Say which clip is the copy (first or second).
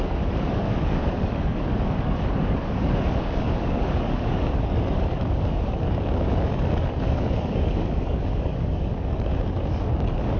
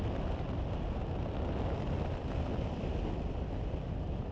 first